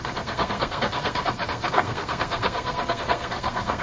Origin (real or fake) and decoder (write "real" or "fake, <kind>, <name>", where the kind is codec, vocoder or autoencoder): fake, codec, SNAC